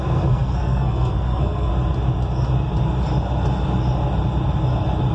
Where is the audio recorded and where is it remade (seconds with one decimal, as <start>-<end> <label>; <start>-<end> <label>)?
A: 0.0-1.7 remade; 1.7-5.1 recorded